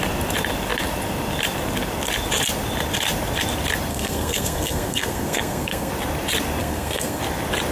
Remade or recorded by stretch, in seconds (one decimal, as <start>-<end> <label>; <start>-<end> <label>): 0.0-3.9 recorded; 3.9-5.9 remade; 5.9-6.6 recorded; 6.6-7.2 remade; 7.2-7.7 recorded